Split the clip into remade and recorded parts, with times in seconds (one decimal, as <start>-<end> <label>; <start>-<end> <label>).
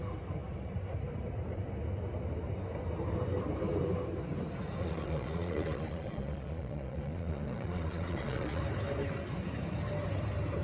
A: 0.0-4.8 recorded; 4.8-8.6 remade; 8.6-10.6 recorded